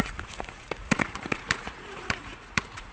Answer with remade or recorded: remade